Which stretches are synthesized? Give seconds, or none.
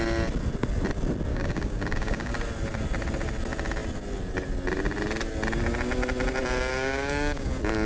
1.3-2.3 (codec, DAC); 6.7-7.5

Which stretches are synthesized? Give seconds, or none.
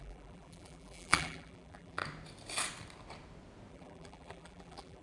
0.0-2.0 (vocoder, BigVGAN v2); 3.7-5.0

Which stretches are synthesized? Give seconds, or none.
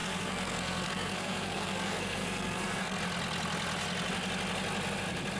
0.0-3.0 (codec, SNAC)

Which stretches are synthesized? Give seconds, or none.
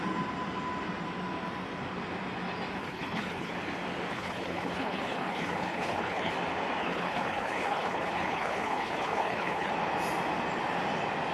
2.8-3.5 (codec, HILCodec); 4.1-6.3; 6.8-9.7